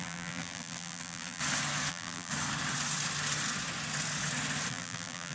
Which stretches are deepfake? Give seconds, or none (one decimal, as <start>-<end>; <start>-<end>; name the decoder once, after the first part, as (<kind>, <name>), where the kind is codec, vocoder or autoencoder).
0.0-1.4 (vocoder, BigVGAN v2); 1.9-2.3; 4.7-5.3